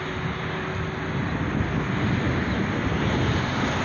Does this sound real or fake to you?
real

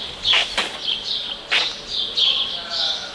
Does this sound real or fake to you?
real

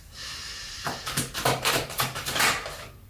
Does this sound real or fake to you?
fake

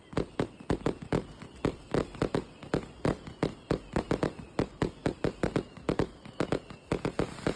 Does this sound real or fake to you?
fake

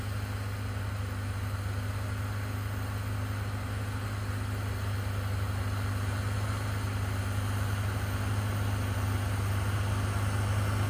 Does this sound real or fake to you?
real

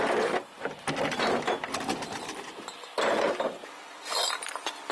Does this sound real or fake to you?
real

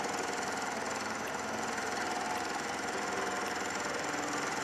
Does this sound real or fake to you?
fake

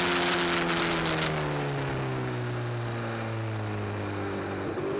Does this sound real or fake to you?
real